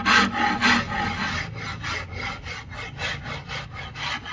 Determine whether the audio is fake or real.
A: real